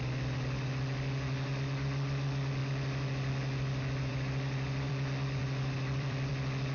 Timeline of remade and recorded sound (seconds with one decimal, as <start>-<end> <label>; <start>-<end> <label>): 0.0-4.1 recorded; 4.1-4.9 remade; 4.9-5.4 recorded; 5.4-6.3 remade; 6.3-6.7 recorded